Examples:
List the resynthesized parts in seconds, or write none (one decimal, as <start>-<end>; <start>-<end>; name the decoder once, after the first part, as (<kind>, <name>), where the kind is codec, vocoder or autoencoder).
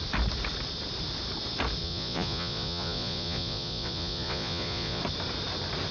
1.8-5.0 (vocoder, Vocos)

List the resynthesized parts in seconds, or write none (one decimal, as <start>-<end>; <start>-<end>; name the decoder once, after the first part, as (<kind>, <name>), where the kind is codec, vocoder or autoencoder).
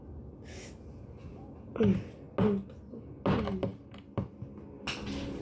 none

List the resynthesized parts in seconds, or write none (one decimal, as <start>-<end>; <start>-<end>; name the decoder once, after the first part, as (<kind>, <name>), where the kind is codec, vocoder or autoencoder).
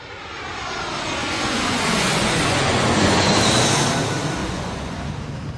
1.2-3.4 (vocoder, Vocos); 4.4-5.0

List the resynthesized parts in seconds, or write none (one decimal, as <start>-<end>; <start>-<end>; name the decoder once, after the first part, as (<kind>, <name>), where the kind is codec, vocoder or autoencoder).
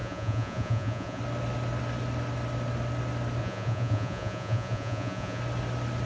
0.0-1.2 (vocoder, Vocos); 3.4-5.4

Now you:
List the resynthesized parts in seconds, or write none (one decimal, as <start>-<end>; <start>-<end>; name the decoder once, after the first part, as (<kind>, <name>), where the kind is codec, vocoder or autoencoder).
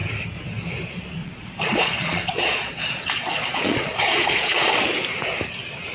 1.2-4.7 (vocoder, Vocos)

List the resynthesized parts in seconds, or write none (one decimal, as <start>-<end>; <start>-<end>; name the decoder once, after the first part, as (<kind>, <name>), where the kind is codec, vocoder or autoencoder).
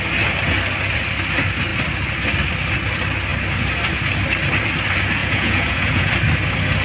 5.2-6.1 (vocoder, Vocos)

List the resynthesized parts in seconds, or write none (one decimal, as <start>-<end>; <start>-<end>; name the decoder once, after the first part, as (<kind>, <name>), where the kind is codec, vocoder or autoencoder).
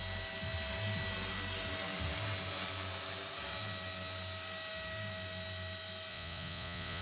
6.1-7.0 (vocoder, Vocos)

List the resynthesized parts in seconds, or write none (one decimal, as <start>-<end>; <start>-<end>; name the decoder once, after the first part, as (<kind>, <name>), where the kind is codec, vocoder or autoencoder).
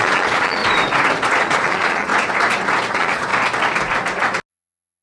0.0-0.6 (vocoder, Vocos); 1.4-2.1; 2.9-3.3; 4.5-5.0